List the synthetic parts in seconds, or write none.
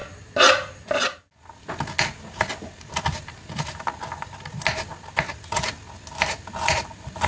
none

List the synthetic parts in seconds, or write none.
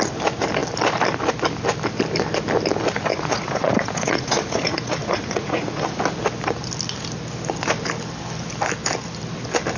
3.1-6.0 (vocoder, Vocos)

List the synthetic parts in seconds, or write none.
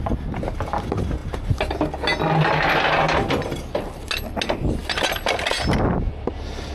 none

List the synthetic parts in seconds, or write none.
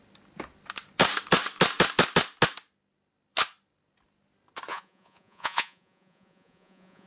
4.7-7.1 (vocoder, Vocos)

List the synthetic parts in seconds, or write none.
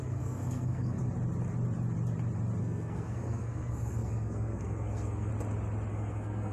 0.0-1.0 (codec, SNAC); 2.6-5.3; 5.9-6.5